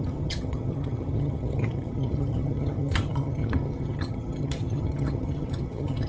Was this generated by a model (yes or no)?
yes